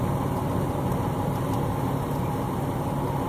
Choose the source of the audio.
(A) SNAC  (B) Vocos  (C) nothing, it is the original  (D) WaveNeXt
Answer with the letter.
C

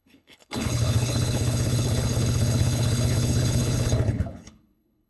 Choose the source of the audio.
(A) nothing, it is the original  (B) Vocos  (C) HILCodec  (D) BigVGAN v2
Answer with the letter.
C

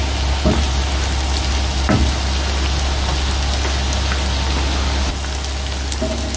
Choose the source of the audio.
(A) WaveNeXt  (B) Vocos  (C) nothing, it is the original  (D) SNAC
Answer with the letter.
C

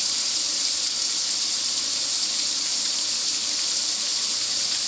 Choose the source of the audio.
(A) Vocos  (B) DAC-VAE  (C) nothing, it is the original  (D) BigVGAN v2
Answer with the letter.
D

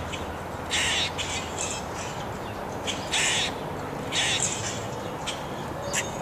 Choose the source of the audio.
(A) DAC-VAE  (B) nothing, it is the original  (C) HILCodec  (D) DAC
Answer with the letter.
B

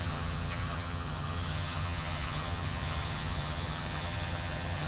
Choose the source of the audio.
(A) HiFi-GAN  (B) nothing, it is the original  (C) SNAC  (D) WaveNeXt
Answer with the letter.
A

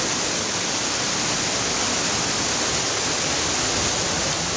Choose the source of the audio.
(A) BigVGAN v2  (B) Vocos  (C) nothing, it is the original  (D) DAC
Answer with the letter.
C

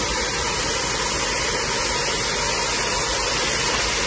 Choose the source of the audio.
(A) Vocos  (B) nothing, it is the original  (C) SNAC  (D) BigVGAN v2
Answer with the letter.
B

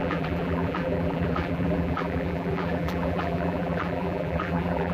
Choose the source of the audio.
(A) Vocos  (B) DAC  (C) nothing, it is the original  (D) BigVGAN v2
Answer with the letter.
D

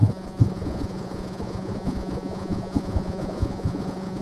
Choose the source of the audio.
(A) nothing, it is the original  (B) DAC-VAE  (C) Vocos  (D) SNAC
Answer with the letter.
C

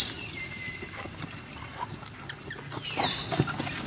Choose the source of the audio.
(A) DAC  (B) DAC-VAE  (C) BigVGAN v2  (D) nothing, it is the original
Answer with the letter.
D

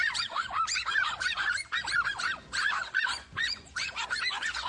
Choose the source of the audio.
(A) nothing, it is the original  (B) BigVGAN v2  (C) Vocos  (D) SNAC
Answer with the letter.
C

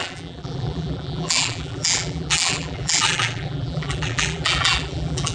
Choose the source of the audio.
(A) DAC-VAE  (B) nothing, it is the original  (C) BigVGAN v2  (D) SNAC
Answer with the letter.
C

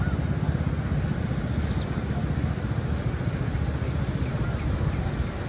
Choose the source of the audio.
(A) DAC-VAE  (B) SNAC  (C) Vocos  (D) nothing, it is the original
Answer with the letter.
D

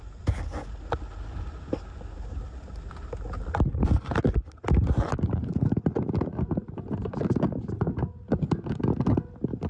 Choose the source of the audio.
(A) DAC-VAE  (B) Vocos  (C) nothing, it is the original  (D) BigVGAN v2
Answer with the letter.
C